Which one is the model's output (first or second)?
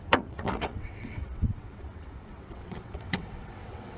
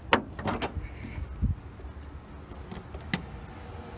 first